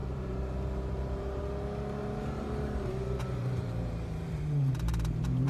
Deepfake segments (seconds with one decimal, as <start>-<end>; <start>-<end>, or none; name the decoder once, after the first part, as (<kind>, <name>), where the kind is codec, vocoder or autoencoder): 0.0-1.4 (vocoder, BigVGAN v2); 2.0-5.5

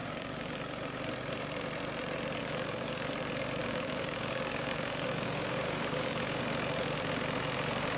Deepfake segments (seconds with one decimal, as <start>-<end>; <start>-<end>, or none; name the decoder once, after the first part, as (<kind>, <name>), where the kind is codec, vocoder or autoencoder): 0.0-0.6 (codec, DAC); 2.4-3.1; 3.6-6.4

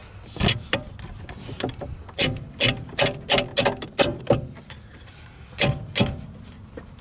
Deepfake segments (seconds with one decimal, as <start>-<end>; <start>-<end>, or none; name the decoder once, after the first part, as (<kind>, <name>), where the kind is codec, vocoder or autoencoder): 3.5-4.2 (vocoder, BigVGAN v2)

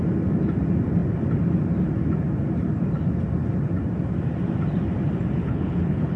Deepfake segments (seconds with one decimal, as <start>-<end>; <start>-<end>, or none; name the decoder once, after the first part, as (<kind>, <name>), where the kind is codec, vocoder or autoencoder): 5.4-6.2 (codec, HILCodec)

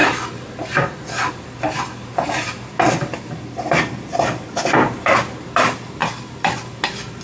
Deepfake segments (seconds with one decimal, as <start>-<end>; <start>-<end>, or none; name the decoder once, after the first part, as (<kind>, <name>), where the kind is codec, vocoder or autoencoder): none

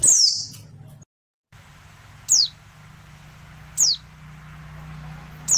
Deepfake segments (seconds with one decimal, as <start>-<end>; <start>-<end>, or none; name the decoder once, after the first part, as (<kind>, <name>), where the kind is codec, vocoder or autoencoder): none

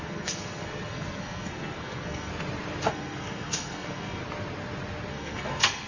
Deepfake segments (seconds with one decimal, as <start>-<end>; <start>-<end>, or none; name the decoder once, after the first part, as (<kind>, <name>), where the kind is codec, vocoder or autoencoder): 0.0-2.3 (codec, SNAC); 2.9-4.2; 5.1-5.9

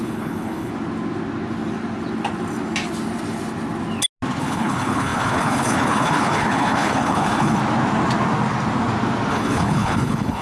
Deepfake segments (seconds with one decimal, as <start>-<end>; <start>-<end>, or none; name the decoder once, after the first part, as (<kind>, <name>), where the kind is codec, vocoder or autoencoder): 0.0-0.7 (codec, HILCodec); 4.4-7.6; 9.3-10.4